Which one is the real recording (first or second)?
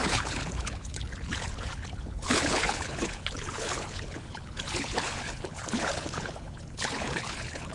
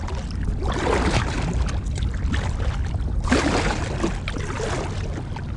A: second